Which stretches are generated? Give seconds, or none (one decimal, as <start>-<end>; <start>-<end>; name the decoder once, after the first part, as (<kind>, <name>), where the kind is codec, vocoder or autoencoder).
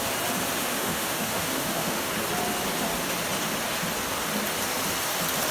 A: 0.6-2.1 (autoencoder, DAC-VAE)